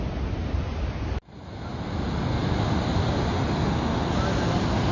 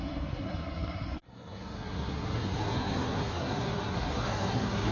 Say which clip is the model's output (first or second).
second